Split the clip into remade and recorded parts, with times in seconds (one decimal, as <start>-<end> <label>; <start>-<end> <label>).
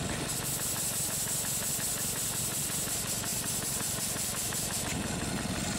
0.0-3.3 recorded; 3.3-4.8 remade; 4.8-5.8 recorded